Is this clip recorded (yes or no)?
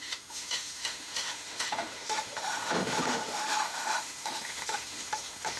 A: no